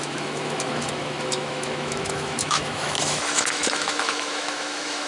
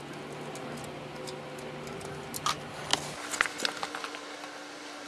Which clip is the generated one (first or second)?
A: first